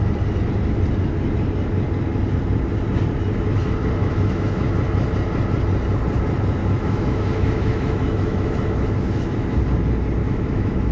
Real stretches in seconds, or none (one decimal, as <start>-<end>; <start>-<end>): 0.0-4.0; 4.7-6.6; 9.6-10.2